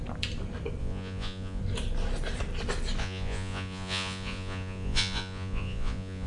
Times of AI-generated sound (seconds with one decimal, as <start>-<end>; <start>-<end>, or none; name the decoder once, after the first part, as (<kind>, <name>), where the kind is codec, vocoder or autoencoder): 0.8-1.6 (vocoder, Vocos); 3.0-6.3